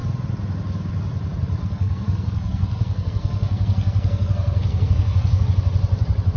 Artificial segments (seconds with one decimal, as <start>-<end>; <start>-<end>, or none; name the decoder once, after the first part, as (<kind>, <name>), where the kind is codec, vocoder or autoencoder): 1.6-5.4 (codec, SNAC)